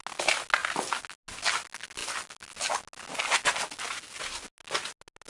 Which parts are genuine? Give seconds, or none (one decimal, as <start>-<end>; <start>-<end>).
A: 0.0-5.3